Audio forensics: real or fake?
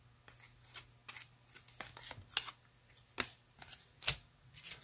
real